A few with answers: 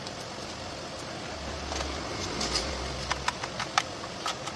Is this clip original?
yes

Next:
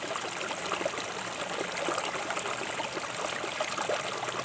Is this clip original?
yes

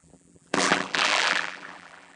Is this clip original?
no